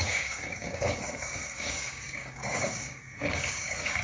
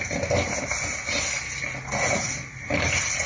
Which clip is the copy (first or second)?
first